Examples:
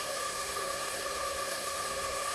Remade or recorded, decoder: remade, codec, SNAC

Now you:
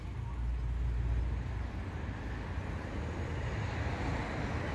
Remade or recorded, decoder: recorded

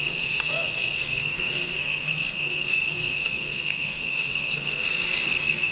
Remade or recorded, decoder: remade, codec, SNAC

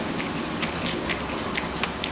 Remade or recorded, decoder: recorded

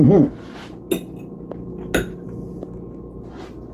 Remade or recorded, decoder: recorded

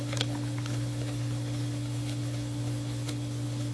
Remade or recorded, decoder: remade, codec, HILCodec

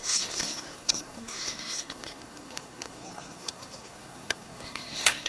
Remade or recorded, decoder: remade, codec, SNAC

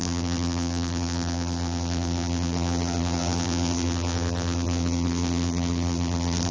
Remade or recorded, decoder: remade, vocoder, BigVGAN v2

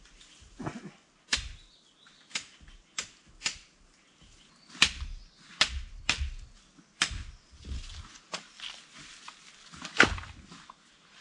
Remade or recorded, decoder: recorded